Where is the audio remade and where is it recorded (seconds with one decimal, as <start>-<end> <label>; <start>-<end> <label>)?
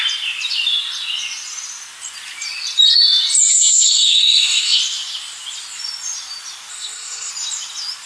0.0-3.5 recorded; 3.5-4.8 remade; 4.8-6.7 recorded; 6.7-7.3 remade; 7.3-8.1 recorded